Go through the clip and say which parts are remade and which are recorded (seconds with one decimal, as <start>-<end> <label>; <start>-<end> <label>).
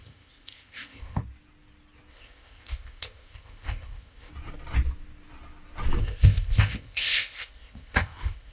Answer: 0.0-1.2 remade; 1.2-2.1 recorded; 2.1-4.3 remade; 4.3-6.0 recorded; 6.0-8.5 remade